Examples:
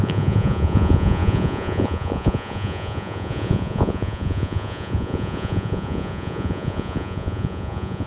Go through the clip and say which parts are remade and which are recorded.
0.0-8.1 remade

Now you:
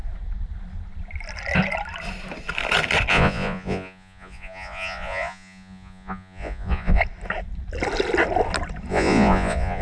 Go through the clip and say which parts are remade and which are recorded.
0.0-3.1 recorded; 3.1-7.0 remade; 7.0-8.9 recorded; 8.9-9.8 remade

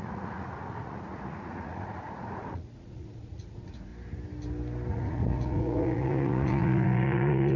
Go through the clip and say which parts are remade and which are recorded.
0.0-3.9 remade; 3.9-4.9 recorded; 4.9-7.6 remade

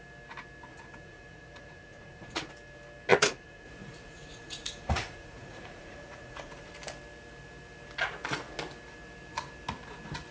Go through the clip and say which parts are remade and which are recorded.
0.0-0.7 recorded; 0.7-2.5 remade; 2.5-3.1 recorded; 3.1-6.7 remade; 6.7-10.3 recorded